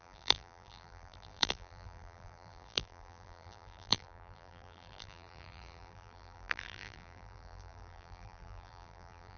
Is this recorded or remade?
remade